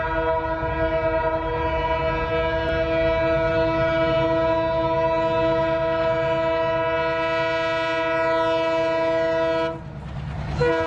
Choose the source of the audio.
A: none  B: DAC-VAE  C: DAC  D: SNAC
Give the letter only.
A